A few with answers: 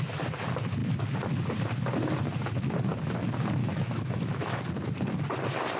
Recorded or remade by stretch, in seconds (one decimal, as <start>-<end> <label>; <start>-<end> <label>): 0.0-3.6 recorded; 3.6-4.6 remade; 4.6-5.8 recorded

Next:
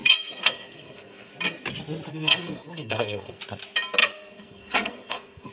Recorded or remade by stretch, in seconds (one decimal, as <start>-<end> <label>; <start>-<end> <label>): 0.0-1.3 remade; 1.3-2.1 recorded; 2.1-3.4 remade; 3.4-4.0 recorded; 4.0-5.5 remade

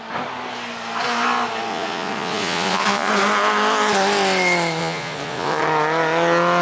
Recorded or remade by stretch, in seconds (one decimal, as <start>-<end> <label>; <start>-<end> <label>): 0.0-1.7 recorded; 1.7-3.1 remade; 3.1-4.8 recorded; 4.8-5.6 remade; 5.6-6.6 recorded

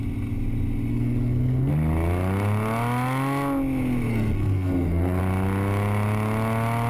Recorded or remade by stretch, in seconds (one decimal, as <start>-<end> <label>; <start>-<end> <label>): 0.0-0.9 recorded; 0.9-1.7 remade; 1.7-4.1 recorded; 4.1-5.2 remade; 5.2-6.9 recorded

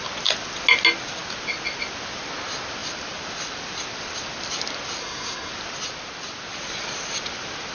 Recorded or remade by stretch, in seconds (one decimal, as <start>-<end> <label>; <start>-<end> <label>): 0.0-5.0 recorded; 5.0-5.5 remade; 5.5-7.7 recorded